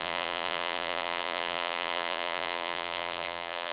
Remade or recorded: remade